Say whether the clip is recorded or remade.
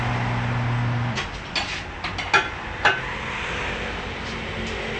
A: recorded